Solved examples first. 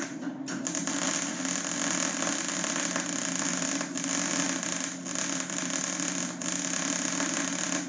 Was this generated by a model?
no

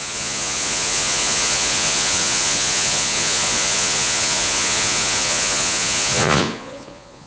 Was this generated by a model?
yes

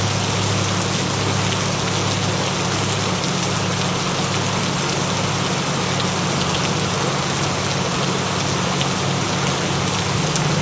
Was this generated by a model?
no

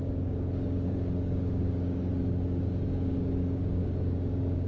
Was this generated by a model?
yes